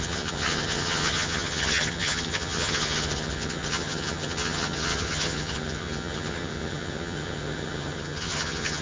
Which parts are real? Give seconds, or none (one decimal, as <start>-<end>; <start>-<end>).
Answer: none

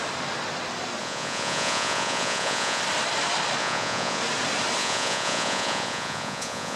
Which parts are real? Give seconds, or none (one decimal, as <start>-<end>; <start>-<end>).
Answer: 0.0-1.0; 2.8-3.6; 4.2-4.8